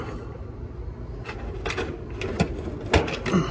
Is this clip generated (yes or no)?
no